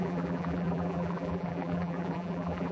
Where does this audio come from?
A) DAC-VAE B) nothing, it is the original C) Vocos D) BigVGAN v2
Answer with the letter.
D